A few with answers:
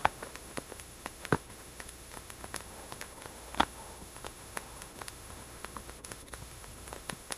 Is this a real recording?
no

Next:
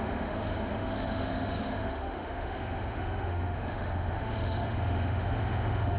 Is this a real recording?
no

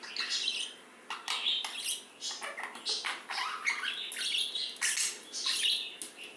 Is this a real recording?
yes